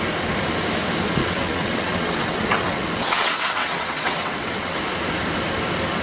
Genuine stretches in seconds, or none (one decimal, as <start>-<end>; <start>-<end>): 0.0-1.2; 4.8-6.0